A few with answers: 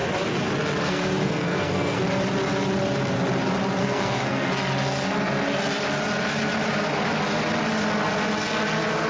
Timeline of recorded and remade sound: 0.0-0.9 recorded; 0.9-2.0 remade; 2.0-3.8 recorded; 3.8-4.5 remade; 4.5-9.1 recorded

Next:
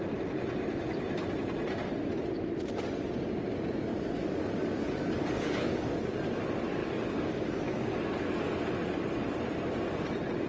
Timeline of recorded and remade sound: 0.0-3.9 recorded; 3.9-6.0 remade; 6.0-6.8 recorded; 6.8-7.9 remade; 7.9-10.5 recorded

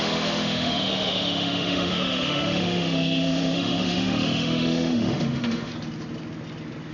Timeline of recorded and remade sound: 0.0-5.7 remade; 5.7-6.9 recorded